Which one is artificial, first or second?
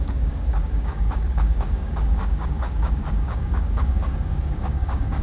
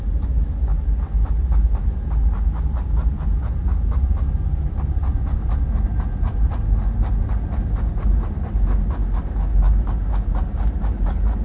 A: first